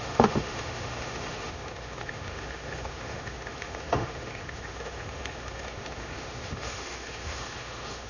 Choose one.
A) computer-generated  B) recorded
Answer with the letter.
A